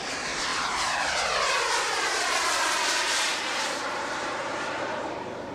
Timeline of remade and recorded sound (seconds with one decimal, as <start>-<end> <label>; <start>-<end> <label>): 0.0-5.5 remade